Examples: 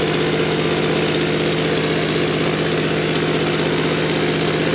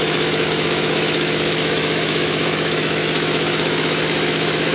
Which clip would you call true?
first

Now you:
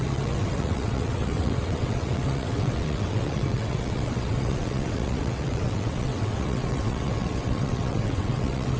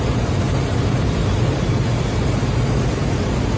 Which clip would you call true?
second